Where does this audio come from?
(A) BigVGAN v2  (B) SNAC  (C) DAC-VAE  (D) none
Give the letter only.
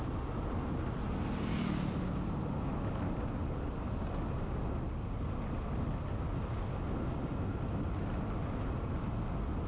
D